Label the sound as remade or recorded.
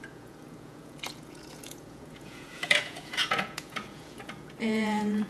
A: remade